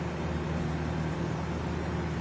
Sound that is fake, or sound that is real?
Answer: real